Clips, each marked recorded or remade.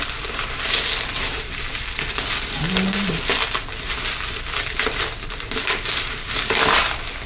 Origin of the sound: recorded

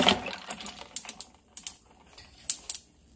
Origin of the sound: recorded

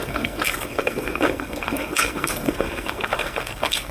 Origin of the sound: remade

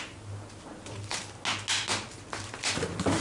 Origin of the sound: recorded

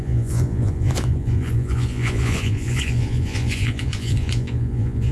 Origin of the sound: remade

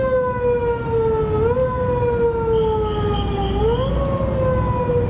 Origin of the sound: recorded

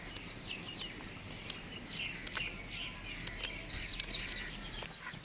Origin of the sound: recorded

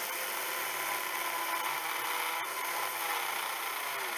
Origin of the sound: recorded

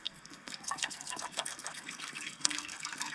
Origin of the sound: remade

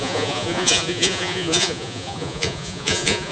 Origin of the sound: remade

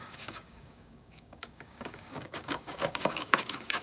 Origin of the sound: remade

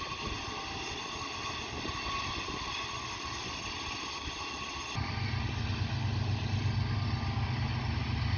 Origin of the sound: recorded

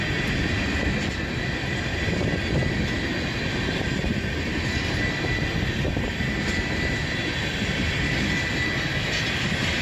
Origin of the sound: recorded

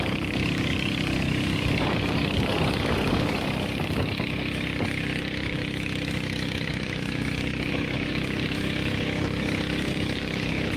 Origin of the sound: remade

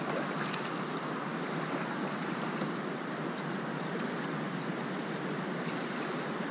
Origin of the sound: recorded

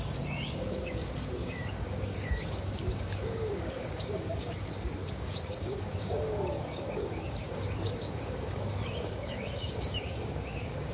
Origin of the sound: remade